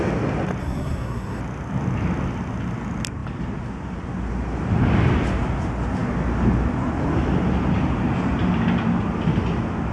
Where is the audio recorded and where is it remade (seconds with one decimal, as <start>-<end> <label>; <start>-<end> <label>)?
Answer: 0.0-0.6 recorded; 0.6-1.4 remade; 1.4-9.9 recorded